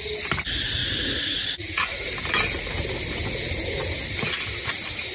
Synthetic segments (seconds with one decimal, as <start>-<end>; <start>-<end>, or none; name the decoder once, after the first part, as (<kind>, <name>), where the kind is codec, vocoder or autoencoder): 0.8-2.1 (vocoder, Vocos)